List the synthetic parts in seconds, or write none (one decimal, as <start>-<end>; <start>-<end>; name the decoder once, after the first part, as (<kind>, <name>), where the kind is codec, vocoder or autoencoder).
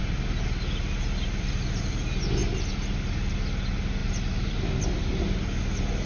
none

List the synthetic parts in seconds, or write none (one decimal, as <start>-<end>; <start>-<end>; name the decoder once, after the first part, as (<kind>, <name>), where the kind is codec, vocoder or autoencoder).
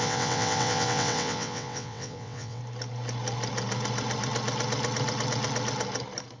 0.0-2.6 (vocoder, WaveNeXt)